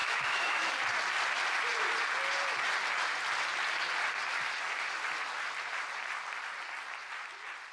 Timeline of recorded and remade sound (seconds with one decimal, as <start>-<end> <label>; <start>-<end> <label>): 0.0-0.7 remade; 0.7-7.7 recorded